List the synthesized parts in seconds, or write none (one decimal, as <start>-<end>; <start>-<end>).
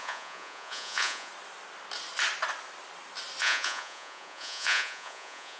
0.0-1.3; 3.4-5.6